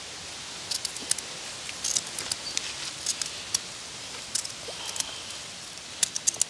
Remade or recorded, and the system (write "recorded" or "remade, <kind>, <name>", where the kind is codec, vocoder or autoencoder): recorded